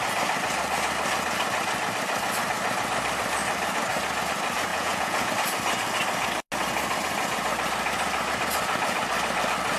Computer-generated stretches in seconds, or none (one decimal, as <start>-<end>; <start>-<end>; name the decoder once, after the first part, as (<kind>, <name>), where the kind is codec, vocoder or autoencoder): 4.7-5.3 (vocoder, Vocos)